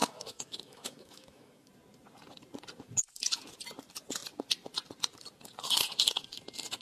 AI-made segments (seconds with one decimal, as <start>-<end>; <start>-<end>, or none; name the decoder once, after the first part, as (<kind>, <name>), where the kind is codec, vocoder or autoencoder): 0.0-1.7 (autoencoder, DAC-VAE)